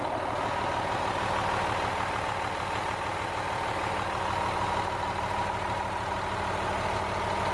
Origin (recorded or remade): recorded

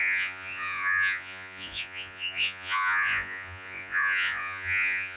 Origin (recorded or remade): remade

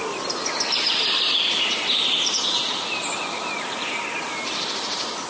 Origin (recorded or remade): recorded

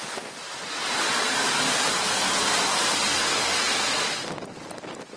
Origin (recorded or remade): remade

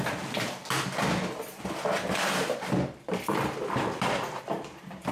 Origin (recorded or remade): remade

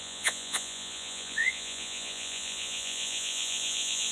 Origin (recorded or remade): remade